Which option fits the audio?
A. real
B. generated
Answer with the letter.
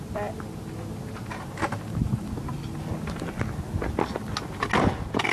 A